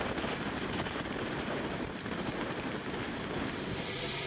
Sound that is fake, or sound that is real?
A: real